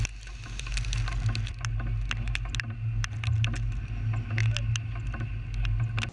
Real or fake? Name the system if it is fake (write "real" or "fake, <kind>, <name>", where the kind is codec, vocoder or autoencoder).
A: real